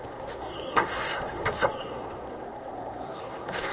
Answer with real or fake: fake